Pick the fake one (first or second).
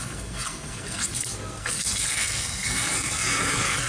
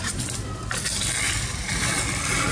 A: first